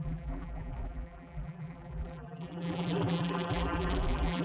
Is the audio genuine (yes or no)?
no